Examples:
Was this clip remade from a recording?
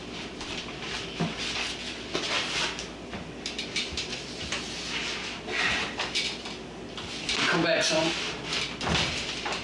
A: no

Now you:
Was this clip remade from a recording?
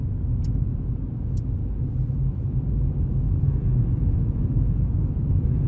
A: no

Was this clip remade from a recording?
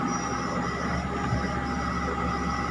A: no